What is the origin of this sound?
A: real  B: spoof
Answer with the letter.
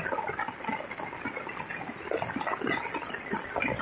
A